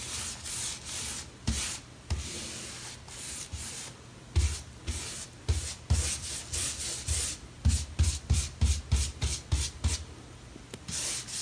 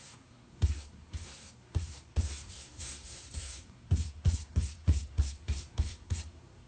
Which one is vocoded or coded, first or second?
second